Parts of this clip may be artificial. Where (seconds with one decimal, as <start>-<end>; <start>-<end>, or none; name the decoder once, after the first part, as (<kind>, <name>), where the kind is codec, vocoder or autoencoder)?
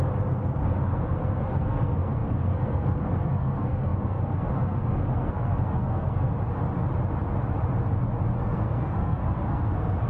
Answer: 0.0-6.3 (codec, SNAC); 8.4-10.1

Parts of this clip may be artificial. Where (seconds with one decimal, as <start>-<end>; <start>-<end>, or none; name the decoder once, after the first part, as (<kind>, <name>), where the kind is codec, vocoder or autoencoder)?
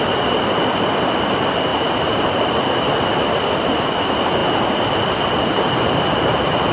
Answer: none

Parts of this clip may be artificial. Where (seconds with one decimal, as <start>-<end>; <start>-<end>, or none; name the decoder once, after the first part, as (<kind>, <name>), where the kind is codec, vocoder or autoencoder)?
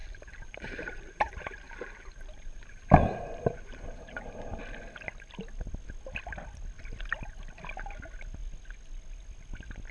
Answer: 0.0-4.6 (vocoder, BigVGAN v2)